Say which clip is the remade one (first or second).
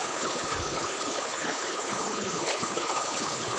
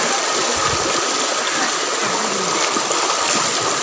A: first